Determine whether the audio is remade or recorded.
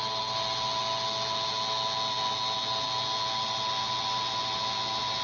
recorded